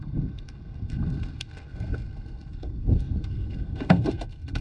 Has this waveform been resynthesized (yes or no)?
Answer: yes